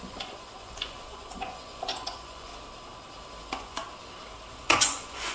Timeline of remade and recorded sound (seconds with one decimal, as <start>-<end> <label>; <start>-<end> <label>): 0.0-2.5 remade; 2.5-3.4 recorded; 3.4-3.8 remade; 3.8-4.5 recorded; 4.5-5.3 remade